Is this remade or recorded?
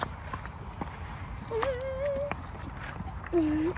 recorded